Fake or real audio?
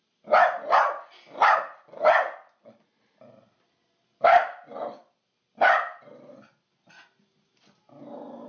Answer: real